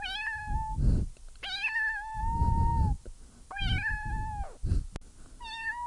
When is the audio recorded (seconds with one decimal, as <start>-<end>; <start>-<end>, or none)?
0.0-1.6; 2.2-5.9